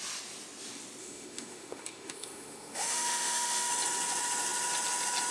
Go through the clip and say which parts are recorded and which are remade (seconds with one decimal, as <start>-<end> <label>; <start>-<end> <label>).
0.0-1.0 recorded; 1.0-3.7 remade; 3.7-5.3 recorded